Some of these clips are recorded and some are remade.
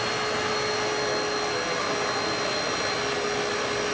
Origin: recorded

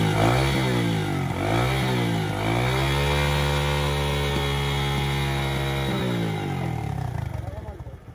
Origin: recorded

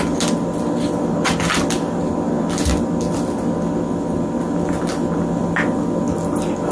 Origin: recorded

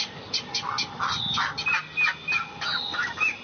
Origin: recorded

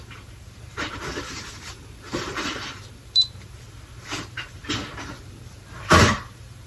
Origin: remade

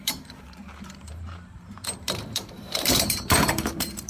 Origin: remade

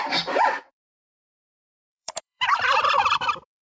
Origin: remade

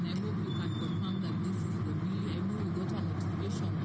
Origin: recorded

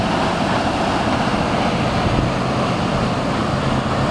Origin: recorded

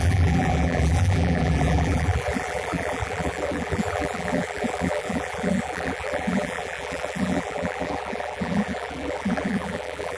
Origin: remade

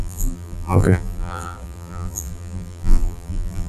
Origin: remade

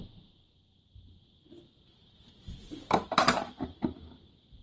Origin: remade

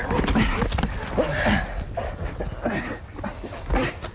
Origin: recorded